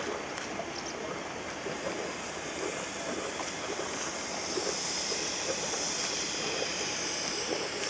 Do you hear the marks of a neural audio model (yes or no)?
no